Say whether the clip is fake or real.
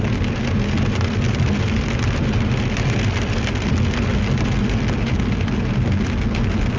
real